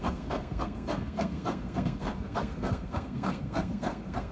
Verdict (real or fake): fake